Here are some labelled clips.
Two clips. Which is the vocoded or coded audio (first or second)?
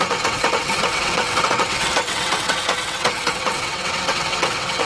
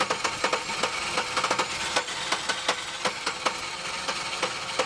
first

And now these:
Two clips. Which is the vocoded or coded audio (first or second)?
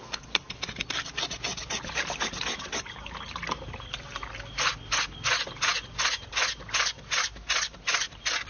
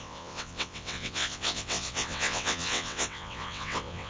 second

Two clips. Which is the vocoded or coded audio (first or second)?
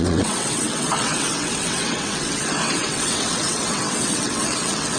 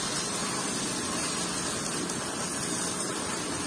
first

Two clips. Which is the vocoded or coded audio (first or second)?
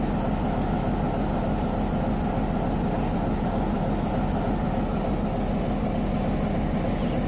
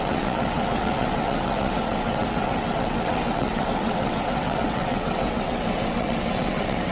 second